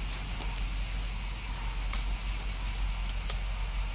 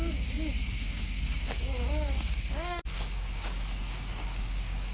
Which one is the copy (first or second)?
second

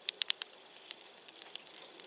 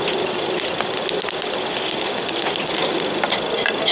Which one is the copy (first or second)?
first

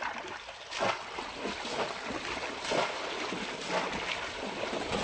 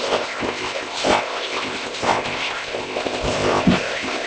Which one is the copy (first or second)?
second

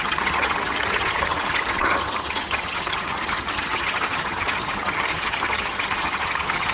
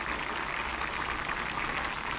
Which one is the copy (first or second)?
first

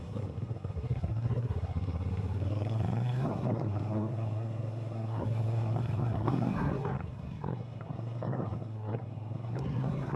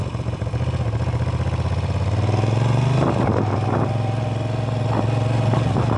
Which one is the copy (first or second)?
first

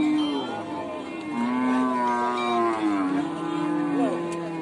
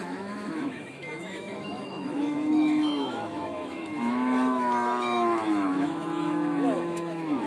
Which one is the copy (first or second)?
second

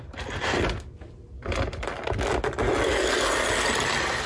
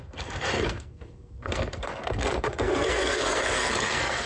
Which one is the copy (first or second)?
second